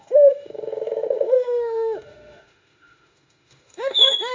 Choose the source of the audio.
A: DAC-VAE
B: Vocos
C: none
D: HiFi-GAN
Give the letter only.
A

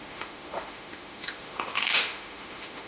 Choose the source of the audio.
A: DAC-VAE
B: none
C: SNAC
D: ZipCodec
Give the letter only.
A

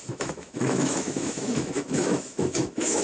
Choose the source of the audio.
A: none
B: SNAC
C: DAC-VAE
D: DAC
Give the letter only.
C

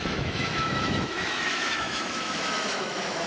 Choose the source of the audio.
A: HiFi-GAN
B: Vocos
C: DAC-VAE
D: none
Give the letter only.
C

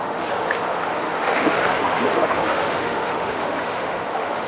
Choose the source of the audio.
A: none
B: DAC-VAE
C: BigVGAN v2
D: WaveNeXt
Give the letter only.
B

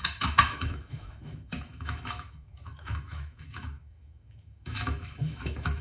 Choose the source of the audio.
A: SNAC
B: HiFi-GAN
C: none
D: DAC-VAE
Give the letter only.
D